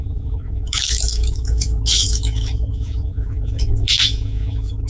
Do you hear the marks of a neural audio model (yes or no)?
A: yes